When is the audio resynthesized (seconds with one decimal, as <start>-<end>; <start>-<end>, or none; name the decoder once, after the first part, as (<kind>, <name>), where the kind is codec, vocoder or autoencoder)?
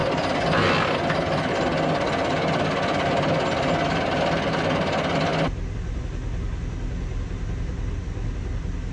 none